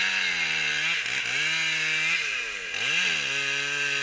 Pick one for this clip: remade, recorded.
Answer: recorded